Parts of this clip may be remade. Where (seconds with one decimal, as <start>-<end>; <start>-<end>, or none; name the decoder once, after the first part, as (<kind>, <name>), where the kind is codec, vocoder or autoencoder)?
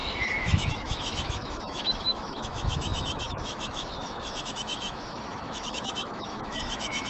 0.0-7.1 (autoencoder, DAC-VAE)